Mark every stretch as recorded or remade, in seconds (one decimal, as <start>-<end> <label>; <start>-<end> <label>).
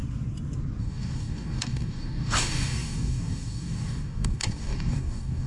0.0-0.8 recorded; 0.8-5.5 remade